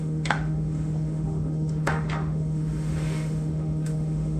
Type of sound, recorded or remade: remade